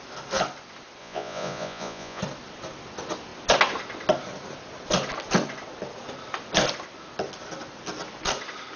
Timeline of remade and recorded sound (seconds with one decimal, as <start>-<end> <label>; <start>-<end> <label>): 0.0-1.0 recorded; 1.0-2.2 remade; 2.2-8.8 recorded